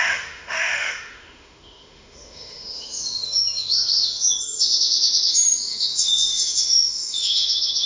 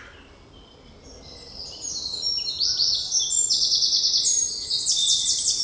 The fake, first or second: first